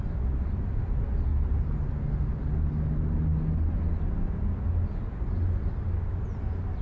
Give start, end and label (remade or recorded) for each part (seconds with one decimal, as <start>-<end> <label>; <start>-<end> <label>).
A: 0.0-6.8 recorded